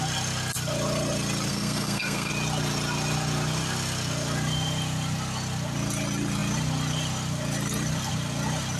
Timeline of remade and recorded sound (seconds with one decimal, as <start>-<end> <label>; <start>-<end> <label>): 0.0-1.5 recorded; 1.5-2.3 remade; 2.3-8.8 recorded